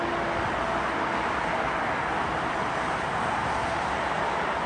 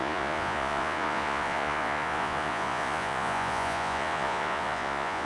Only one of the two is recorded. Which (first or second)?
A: first